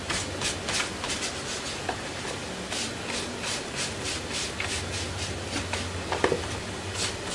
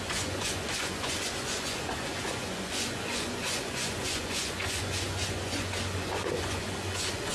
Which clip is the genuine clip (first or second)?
first